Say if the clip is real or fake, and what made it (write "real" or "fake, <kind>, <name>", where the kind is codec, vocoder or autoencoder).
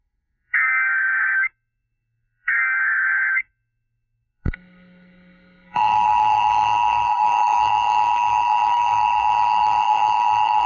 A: fake, codec, SNAC